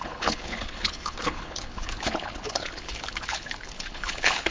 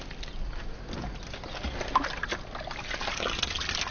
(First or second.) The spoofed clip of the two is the first